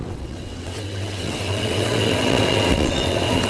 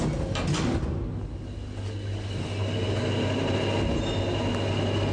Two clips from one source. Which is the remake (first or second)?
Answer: first